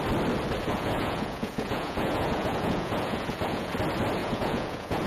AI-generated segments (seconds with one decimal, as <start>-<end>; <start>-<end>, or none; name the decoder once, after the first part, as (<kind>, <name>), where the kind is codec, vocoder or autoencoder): 0.6-3.7 (vocoder, Vocos); 4.2-5.1